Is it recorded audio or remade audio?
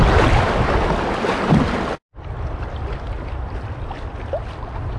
recorded